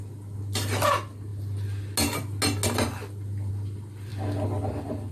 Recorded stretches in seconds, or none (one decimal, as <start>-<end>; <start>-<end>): 0.0-5.1